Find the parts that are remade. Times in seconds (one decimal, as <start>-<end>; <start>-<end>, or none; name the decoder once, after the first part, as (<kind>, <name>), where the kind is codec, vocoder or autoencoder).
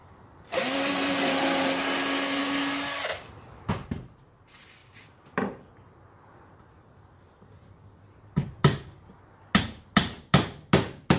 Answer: 0.0-1.4 (vocoder, BigVGAN v2); 4.8-8.6